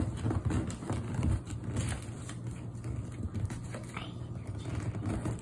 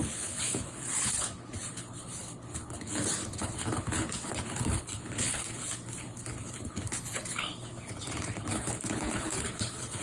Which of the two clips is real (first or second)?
first